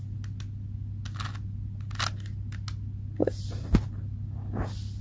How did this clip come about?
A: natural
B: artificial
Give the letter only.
A